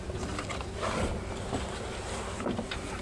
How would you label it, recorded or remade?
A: recorded